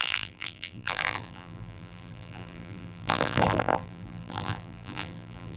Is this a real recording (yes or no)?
no